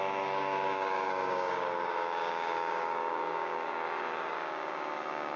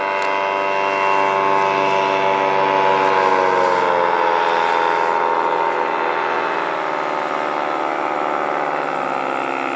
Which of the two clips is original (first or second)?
second